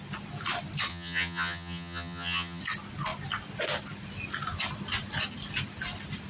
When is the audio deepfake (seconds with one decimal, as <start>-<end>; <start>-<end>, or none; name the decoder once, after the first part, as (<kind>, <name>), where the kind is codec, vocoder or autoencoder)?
0.9-2.6 (vocoder, HiFi-GAN)